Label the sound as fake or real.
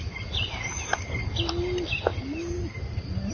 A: real